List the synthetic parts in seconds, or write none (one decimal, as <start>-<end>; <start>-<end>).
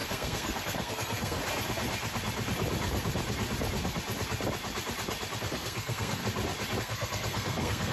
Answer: 0.0-1.4; 5.4-6.2; 6.8-7.9